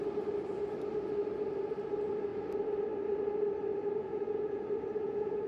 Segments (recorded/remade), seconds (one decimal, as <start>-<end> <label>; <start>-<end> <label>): 0.0-4.0 recorded; 4.0-4.6 remade; 4.6-5.0 recorded; 5.0-5.5 remade